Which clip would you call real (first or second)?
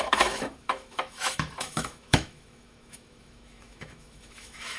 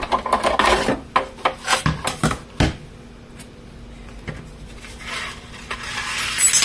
second